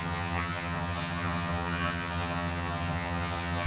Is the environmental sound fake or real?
fake